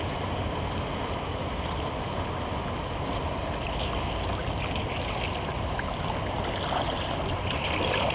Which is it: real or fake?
real